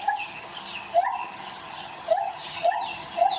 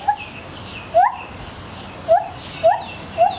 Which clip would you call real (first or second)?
second